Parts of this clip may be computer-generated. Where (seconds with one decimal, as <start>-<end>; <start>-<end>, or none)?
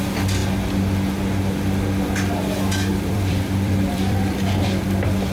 2.9-5.3